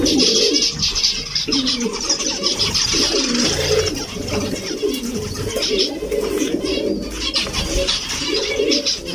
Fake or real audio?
real